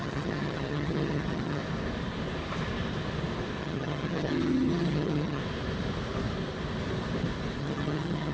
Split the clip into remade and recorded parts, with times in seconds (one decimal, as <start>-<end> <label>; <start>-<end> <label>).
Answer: 0.0-1.6 remade; 1.6-3.6 recorded; 3.6-5.4 remade; 5.4-7.6 recorded; 7.6-8.3 remade